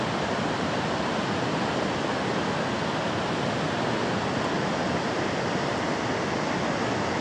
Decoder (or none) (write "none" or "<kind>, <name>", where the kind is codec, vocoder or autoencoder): none